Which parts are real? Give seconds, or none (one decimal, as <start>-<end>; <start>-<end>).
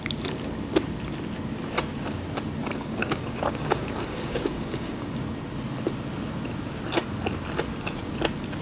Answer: 0.0-2.6; 5.1-8.6